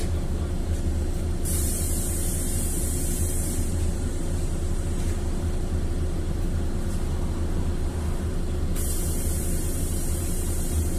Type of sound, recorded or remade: remade